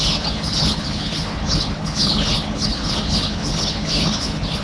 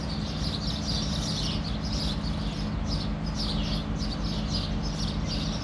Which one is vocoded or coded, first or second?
first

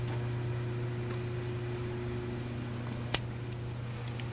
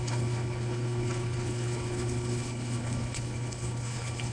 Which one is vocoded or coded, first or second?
second